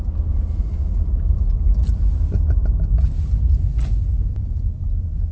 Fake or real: real